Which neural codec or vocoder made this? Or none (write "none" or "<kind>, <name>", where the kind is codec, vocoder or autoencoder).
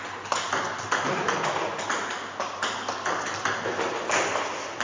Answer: none